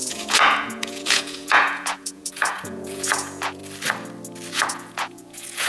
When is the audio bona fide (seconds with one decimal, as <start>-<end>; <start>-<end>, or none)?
3.6-4.5